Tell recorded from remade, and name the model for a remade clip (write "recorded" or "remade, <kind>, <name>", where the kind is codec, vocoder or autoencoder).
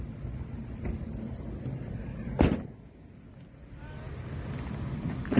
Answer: recorded